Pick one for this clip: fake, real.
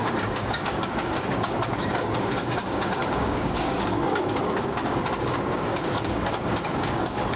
fake